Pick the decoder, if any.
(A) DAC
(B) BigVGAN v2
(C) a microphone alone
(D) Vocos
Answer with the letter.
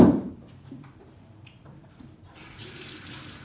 B